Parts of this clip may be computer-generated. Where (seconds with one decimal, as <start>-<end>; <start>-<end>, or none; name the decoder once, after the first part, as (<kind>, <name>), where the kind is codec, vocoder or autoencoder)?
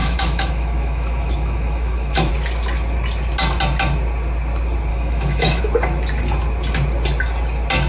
0.0-2.3 (autoencoder, DAC-VAE); 4.9-5.6